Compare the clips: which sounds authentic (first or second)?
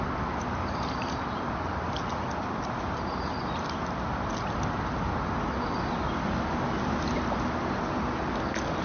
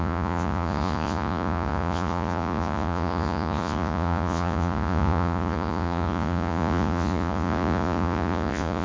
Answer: first